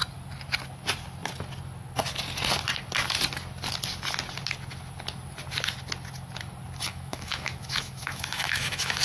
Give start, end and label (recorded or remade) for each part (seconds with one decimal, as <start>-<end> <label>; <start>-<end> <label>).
0.0-6.9 recorded; 6.9-9.0 remade